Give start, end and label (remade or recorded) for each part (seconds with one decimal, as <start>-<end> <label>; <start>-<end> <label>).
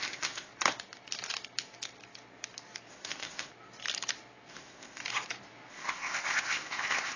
0.0-0.5 remade; 0.5-2.9 recorded; 2.9-3.5 remade; 3.5-4.5 recorded; 4.5-5.0 remade; 5.0-5.7 recorded; 5.7-7.2 remade